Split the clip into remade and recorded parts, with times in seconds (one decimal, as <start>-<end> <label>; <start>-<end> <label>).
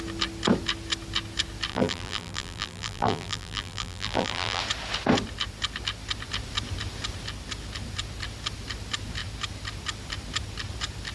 0.0-1.7 recorded; 1.7-4.6 remade; 4.6-11.1 recorded